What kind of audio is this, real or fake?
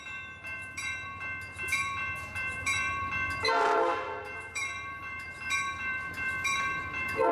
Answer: fake